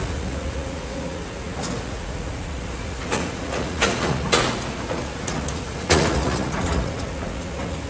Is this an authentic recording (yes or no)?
no